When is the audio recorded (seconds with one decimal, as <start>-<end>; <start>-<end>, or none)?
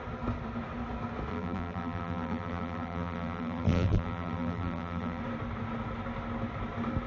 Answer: 0.0-1.3; 5.2-7.1